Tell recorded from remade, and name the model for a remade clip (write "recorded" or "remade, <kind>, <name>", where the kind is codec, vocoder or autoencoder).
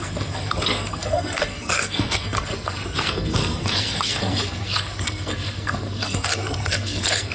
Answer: remade, codec, SNAC